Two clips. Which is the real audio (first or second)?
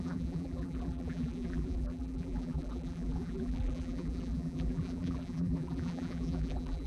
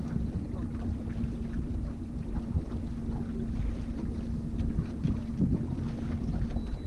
second